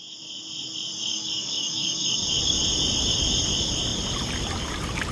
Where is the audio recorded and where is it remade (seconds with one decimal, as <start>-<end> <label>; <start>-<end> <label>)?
0.0-1.1 recorded; 1.1-2.1 remade; 2.1-5.1 recorded